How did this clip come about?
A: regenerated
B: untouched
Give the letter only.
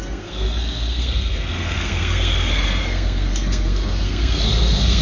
A